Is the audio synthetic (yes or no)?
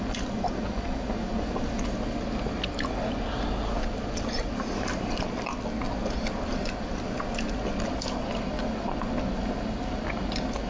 no